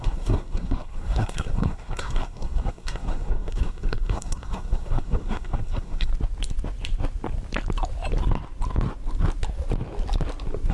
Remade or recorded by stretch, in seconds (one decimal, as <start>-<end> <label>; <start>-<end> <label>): 0.0-6.1 remade; 6.1-10.7 recorded